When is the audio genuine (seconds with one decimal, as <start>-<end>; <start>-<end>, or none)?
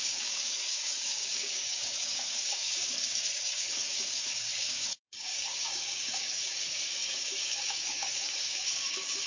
none